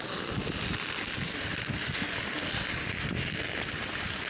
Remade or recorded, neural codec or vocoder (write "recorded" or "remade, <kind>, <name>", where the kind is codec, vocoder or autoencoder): recorded